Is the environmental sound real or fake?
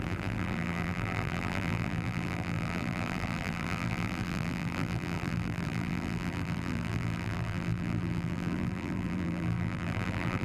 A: fake